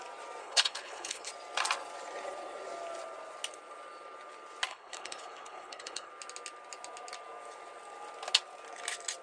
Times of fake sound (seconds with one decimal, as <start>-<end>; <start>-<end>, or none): 0.4-1.3; 4.7-6.1

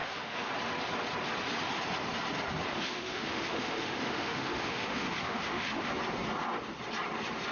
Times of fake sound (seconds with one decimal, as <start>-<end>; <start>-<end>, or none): 0.0-0.5; 2.7-5.9

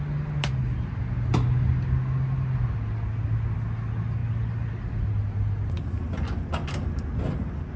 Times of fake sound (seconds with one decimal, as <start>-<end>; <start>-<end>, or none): none